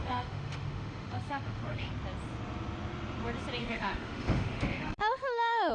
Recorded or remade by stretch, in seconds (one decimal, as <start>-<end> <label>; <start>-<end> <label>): 0.0-1.9 remade; 1.9-3.6 recorded; 3.6-5.7 remade